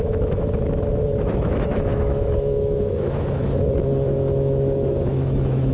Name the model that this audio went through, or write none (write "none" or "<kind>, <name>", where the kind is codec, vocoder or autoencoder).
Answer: autoencoder, DAC-VAE